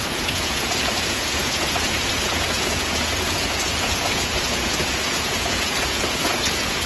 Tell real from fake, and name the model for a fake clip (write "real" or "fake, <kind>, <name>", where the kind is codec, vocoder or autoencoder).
fake, vocoder, Vocos